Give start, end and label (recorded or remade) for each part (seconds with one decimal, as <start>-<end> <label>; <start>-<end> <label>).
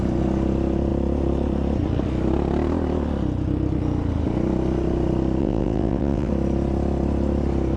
0.0-5.4 recorded; 5.4-6.3 remade; 6.3-7.8 recorded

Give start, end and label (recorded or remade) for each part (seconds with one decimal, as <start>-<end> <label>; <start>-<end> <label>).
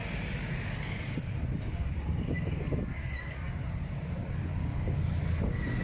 0.0-4.6 recorded; 4.6-5.2 remade; 5.2-5.8 recorded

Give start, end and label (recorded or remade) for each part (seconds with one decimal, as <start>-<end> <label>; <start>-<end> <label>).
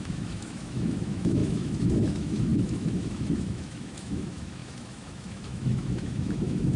0.0-6.8 remade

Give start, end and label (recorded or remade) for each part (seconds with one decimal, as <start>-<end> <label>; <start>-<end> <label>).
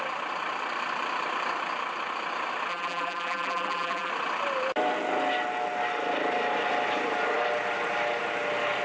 0.0-2.7 recorded; 2.7-4.1 remade; 4.1-8.8 recorded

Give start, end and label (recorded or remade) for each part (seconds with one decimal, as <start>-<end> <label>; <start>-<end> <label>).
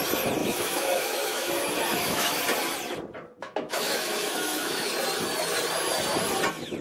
0.0-0.4 recorded; 0.4-1.5 remade; 1.5-1.9 recorded; 1.9-2.4 remade; 2.4-3.4 recorded; 3.4-4.9 remade; 4.9-6.8 recorded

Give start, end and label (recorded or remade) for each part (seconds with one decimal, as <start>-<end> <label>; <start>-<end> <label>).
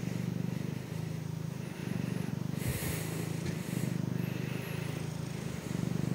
0.0-1.8 recorded; 1.8-2.3 remade; 2.3-6.1 recorded